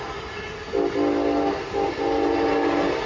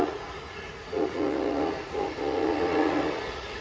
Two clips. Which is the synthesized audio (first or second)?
second